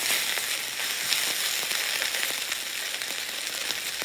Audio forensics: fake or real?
real